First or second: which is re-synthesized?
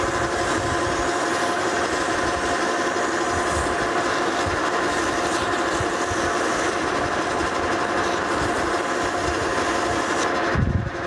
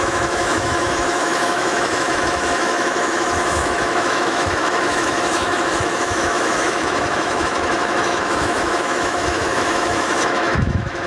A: second